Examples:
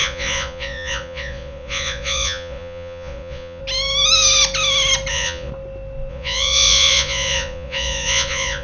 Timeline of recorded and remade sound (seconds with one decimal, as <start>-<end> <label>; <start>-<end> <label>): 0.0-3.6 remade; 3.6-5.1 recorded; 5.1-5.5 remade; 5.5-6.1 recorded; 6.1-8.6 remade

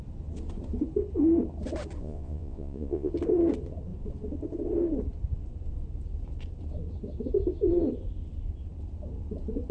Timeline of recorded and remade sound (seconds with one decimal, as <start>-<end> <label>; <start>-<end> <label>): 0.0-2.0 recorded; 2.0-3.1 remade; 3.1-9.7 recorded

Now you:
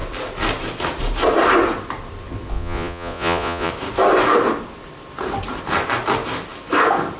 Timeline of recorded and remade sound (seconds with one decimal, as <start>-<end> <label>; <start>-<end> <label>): 0.0-2.5 recorded; 2.5-3.7 remade; 3.7-7.2 recorded

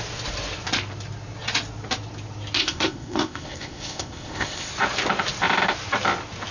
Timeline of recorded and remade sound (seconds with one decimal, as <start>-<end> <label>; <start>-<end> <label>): 0.0-2.6 recorded; 2.6-4.7 remade; 4.7-6.5 recorded

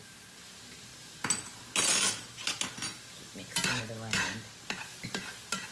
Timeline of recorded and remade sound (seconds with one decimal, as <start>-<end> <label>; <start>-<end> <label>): 0.0-5.7 recorded